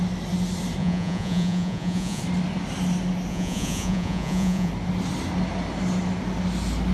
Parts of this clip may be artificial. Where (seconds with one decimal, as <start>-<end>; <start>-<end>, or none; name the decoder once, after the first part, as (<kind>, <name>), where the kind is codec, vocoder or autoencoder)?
0.8-2.2 (vocoder, Vocos); 3.3-4.7